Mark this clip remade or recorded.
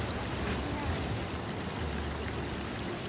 recorded